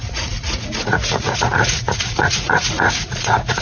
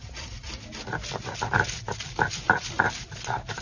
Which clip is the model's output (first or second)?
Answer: first